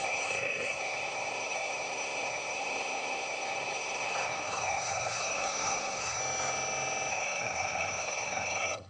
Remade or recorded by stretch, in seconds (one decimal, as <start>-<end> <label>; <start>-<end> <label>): 0.0-6.2 remade; 6.2-7.1 recorded; 7.1-8.9 remade